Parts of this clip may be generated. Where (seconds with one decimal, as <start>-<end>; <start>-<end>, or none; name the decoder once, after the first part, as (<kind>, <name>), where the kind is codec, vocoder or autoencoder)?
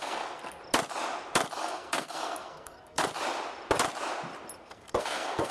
0.0-0.6 (codec, SNAC); 1.6-3.0; 4.6-5.5